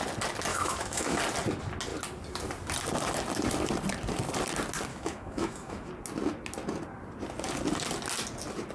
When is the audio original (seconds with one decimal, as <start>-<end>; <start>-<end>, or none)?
0.0-0.5; 1.2-4.9; 5.9-8.7